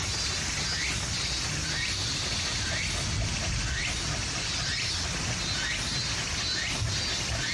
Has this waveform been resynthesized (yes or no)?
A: no